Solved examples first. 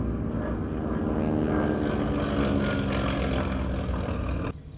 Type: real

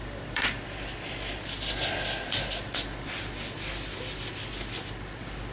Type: real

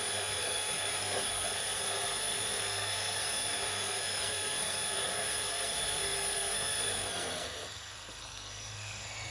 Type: fake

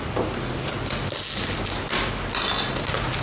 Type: real